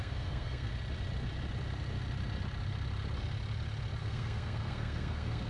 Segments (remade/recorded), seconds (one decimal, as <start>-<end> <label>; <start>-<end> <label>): 0.0-0.7 remade; 0.7-4.0 recorded; 4.0-5.5 remade